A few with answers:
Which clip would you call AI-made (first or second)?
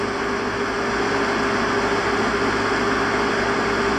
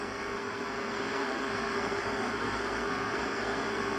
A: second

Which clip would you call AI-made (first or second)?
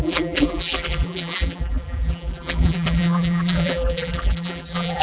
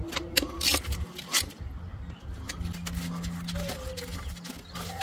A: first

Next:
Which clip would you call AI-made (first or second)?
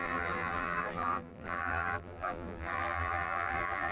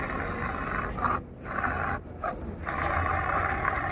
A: first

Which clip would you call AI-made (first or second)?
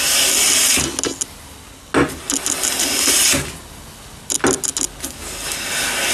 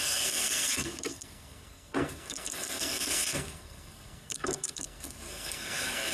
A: second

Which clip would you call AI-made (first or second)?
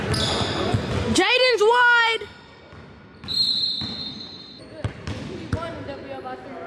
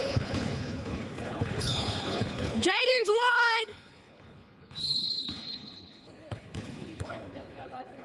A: second